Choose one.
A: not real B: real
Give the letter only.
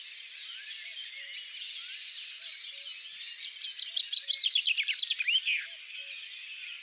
B